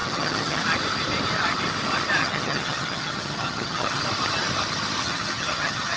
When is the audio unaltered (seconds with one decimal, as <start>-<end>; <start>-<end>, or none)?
0.6-2.2; 4.0-5.0